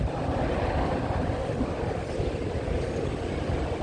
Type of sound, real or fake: real